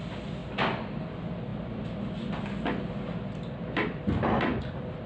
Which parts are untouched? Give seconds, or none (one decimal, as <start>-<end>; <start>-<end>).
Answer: 0.0-5.1